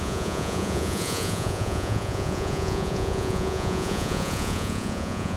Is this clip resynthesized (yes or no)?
yes